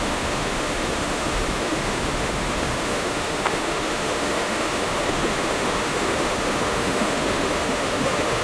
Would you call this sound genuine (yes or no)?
no